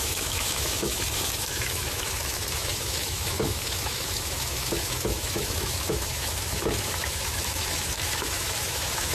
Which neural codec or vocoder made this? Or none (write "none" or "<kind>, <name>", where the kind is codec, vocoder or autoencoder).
autoencoder, DAC-VAE